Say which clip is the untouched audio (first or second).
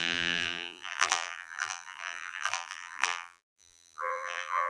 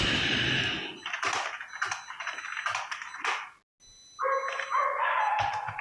second